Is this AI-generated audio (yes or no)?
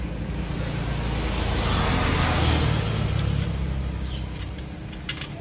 no